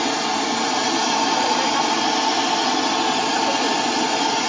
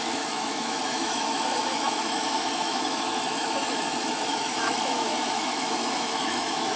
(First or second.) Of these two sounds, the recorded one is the first